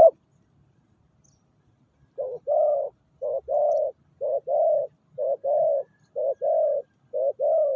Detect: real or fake real